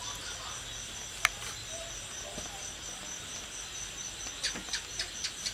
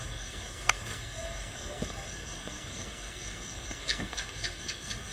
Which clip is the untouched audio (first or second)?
first